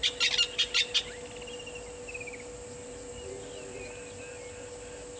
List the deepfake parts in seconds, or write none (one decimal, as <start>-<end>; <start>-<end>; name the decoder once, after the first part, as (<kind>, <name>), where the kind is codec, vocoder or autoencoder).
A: none